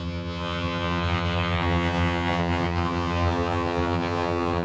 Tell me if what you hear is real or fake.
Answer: fake